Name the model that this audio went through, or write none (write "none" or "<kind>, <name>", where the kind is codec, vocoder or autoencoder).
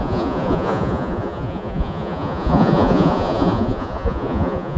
vocoder, Vocos